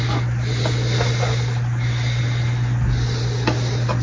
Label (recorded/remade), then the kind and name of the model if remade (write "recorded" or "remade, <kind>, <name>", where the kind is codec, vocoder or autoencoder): recorded